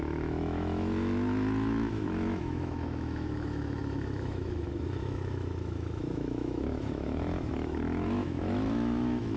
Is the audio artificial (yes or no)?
yes